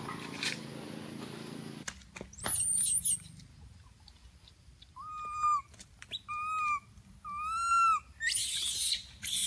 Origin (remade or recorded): recorded